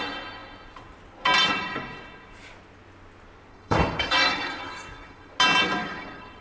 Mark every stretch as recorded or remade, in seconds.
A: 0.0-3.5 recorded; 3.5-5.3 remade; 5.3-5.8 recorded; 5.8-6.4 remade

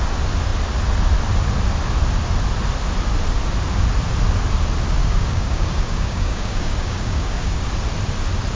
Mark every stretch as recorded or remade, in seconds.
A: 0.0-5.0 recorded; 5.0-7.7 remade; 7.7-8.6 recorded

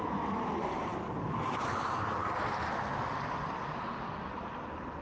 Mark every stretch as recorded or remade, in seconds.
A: 0.0-5.0 recorded

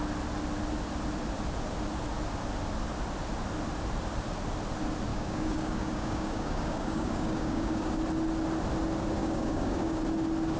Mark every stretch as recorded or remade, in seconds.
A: 0.0-5.1 recorded; 5.1-7.9 remade; 7.9-9.2 recorded; 9.2-10.0 remade; 10.0-10.6 recorded

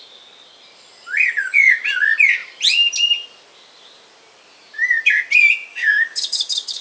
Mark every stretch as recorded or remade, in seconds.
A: 0.0-5.7 recorded; 5.7-6.8 remade